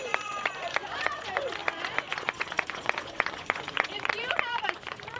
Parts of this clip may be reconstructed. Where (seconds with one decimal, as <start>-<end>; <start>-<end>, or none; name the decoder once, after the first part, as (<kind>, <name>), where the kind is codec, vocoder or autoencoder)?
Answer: 0.0-5.2 (vocoder, Vocos)